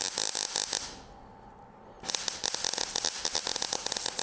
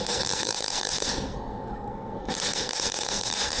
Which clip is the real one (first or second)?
first